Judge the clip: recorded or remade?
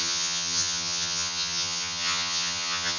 remade